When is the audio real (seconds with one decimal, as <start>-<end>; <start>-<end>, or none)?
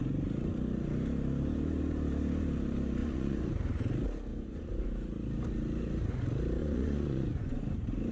0.0-3.0; 3.5-4.3; 4.9-6.6; 7.6-8.1